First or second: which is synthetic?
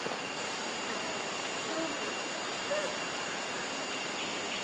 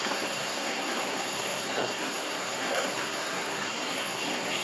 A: second